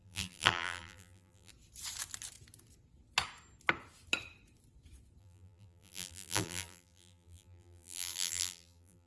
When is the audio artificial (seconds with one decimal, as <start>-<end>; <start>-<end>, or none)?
0.0-1.5; 5.2-9.1

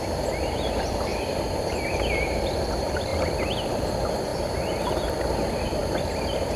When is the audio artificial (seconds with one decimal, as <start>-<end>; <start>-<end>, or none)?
none

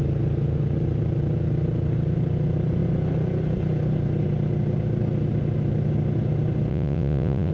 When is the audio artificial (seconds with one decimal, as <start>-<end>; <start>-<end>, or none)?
6.7-7.5

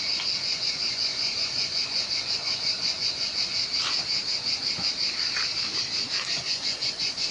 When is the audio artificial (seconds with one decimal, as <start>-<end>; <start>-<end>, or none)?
0.0-3.6; 6.3-7.3

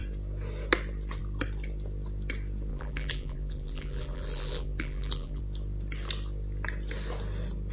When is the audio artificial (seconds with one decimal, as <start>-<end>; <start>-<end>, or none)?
2.7-5.4